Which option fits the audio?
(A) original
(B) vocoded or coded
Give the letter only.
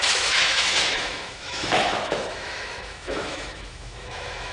B